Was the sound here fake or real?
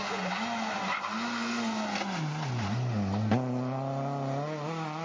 real